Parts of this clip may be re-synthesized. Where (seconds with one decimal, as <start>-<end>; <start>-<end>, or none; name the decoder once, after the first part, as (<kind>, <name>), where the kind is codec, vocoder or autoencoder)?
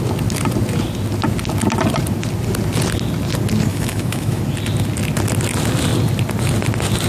3.7-4.4 (autoencoder, DAC-VAE)